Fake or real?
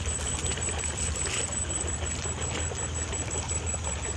real